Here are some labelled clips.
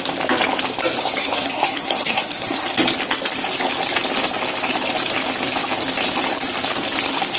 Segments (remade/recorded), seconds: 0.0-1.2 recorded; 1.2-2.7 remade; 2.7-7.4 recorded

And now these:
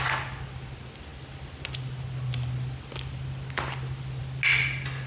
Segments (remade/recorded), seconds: 0.0-5.1 recorded

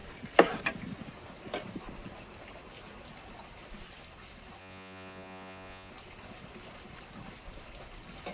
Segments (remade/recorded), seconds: 0.0-4.6 recorded; 4.6-5.9 remade; 5.9-8.3 recorded

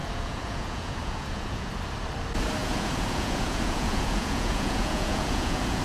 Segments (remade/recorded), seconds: 0.0-1.7 remade; 1.7-2.6 recorded; 2.6-5.8 remade

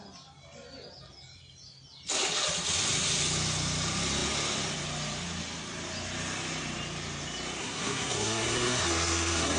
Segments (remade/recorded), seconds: 0.0-7.6 recorded; 7.6-9.6 remade

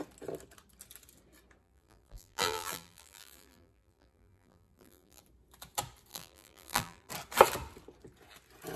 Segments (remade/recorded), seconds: 0.0-1.6 recorded; 1.6-5.2 remade; 5.2-6.1 recorded; 6.1-7.1 remade; 7.1-8.8 recorded